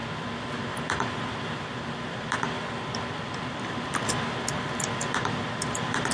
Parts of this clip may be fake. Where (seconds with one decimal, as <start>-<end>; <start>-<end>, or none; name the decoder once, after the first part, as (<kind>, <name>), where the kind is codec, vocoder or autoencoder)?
none